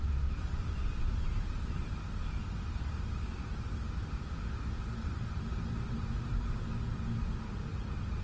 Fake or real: real